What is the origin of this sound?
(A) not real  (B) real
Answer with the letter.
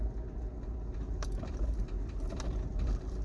B